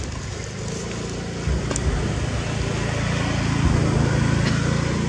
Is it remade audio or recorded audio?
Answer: recorded